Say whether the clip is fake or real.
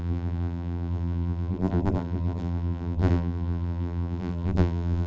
fake